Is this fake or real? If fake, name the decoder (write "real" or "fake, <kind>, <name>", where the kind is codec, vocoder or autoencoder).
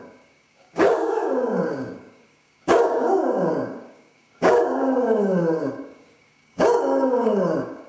fake, codec, DAC